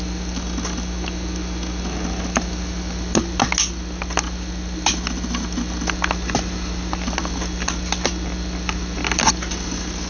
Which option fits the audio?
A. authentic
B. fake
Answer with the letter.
A